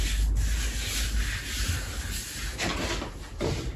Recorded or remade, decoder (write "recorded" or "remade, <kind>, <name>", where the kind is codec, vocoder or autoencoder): recorded